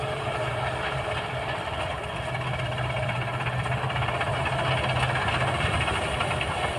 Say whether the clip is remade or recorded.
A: remade